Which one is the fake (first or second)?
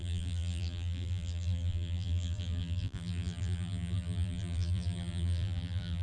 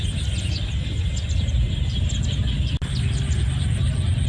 first